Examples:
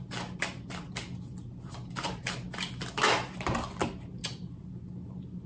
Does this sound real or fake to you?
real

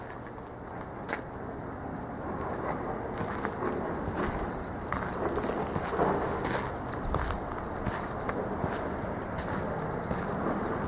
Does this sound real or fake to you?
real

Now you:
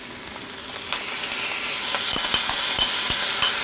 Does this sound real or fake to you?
real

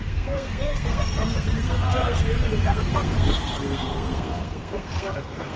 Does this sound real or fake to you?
fake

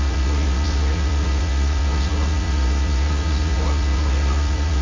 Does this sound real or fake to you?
fake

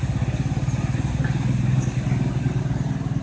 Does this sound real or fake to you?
real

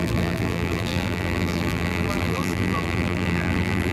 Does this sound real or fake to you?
fake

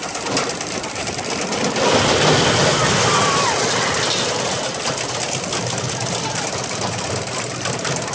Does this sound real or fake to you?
real